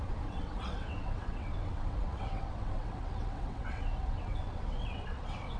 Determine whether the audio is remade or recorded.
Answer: remade